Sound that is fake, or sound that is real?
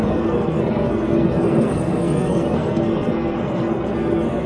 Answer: fake